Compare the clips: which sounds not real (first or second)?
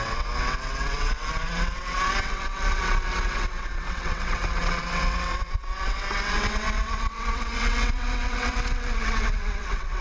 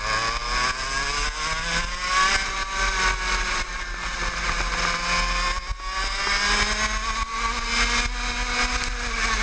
first